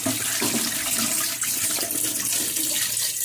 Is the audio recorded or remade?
recorded